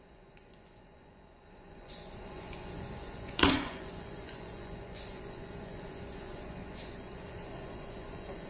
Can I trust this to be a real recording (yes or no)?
no